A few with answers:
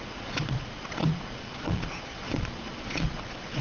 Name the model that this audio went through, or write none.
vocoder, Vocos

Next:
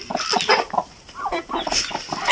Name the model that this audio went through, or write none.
none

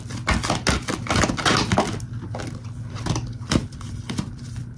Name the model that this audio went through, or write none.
none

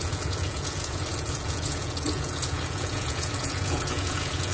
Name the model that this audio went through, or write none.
vocoder, Vocos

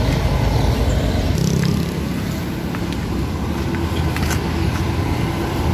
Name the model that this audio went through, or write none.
none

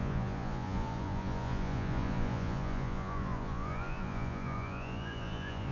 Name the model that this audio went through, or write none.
vocoder, Vocos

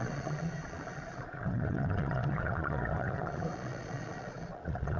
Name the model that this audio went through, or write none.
vocoder, Vocos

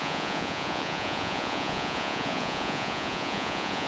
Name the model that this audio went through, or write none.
vocoder, Vocos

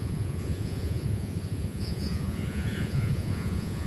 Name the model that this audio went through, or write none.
vocoder, Vocos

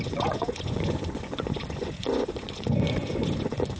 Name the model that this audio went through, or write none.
vocoder, Vocos